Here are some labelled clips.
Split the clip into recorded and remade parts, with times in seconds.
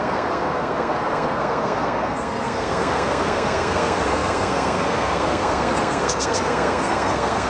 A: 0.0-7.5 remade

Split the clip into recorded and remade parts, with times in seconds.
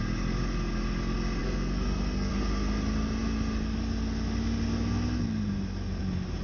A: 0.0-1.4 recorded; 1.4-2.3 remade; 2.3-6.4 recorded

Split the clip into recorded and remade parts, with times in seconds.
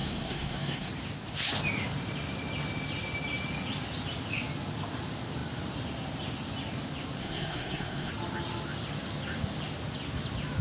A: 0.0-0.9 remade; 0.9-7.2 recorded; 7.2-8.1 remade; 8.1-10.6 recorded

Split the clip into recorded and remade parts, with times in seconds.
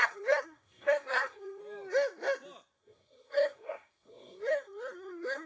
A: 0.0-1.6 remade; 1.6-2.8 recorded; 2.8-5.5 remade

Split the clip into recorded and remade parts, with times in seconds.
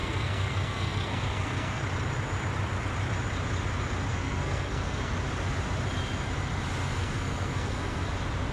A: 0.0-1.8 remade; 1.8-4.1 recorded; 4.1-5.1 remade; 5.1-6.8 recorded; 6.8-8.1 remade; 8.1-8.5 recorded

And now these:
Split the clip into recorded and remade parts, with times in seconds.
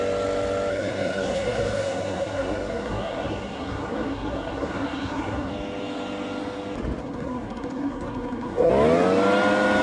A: 0.0-0.7 recorded; 0.7-5.5 remade; 5.5-7.0 recorded; 7.0-8.7 remade; 8.7-9.8 recorded